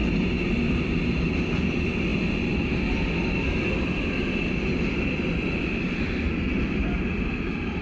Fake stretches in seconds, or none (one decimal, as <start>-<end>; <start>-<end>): none